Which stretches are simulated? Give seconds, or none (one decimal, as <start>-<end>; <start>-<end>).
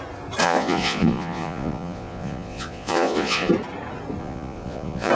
0.4-3.5; 4.2-5.1